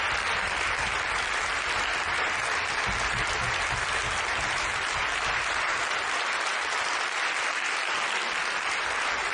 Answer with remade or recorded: recorded